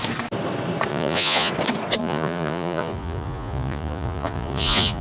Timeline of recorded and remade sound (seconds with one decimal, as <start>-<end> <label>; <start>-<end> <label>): 0.0-0.9 recorded; 0.9-1.5 remade; 1.5-2.0 recorded; 2.0-5.0 remade